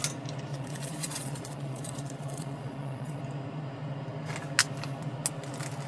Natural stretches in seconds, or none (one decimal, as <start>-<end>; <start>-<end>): 0.0-0.5; 3.2-5.9